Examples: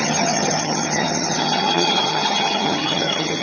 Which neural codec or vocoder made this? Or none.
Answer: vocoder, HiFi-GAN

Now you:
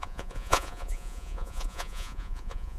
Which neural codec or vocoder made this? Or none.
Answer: vocoder, Vocos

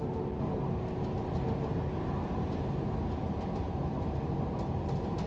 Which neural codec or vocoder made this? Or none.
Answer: none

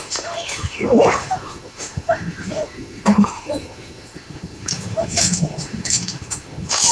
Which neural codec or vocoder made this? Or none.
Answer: autoencoder, DAC-VAE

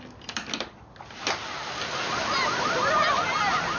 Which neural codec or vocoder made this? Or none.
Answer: none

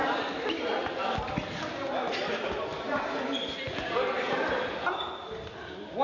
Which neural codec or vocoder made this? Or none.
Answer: none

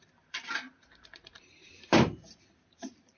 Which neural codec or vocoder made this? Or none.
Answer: vocoder, BigVGAN v2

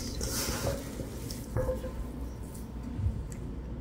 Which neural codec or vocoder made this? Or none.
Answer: none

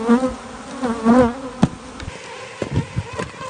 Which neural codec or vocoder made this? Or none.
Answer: none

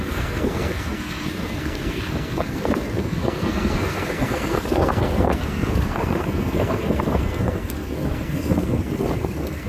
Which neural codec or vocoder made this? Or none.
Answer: codec, SNAC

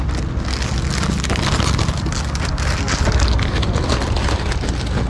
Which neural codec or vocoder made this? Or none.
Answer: none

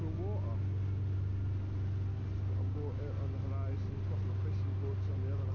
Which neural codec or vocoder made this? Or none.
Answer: none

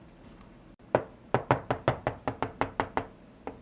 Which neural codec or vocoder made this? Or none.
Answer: none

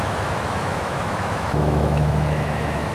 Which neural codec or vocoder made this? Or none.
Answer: autoencoder, DAC-VAE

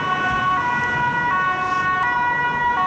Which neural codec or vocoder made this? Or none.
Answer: none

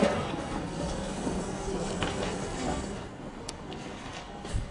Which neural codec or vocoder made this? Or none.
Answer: codec, SNAC